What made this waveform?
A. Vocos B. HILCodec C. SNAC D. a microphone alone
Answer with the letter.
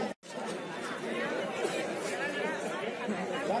D